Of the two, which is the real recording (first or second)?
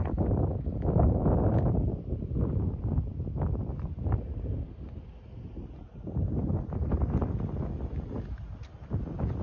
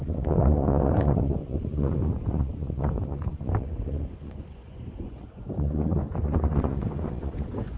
first